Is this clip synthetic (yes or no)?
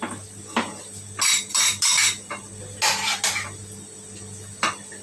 no